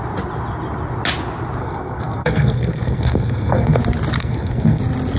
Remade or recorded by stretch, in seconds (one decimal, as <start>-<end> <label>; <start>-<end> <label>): 0.0-1.6 recorded; 1.6-3.8 remade; 3.8-4.2 recorded; 4.2-4.8 remade; 4.8-5.2 recorded